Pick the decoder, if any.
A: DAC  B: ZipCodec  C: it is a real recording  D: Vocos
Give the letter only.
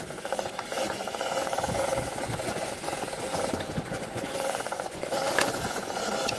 D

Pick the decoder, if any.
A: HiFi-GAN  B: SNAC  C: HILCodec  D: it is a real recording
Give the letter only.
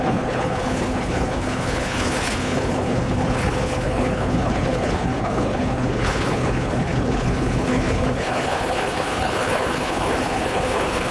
C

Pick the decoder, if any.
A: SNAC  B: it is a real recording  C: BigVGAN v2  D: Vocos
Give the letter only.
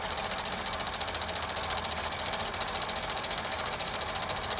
B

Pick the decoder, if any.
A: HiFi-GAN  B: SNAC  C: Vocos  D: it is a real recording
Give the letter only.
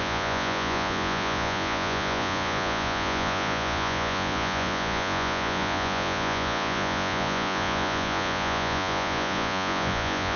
C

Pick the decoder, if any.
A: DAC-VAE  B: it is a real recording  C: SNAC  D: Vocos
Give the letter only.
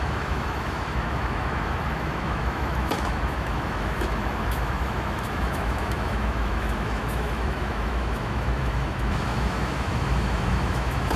A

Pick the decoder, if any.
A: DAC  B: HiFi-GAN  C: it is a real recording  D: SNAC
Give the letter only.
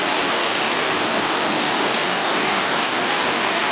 A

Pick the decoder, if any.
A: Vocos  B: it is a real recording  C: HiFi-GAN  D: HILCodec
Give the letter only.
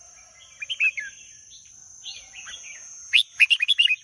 B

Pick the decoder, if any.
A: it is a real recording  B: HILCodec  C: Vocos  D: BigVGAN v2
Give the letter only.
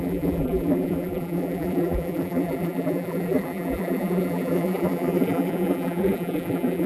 D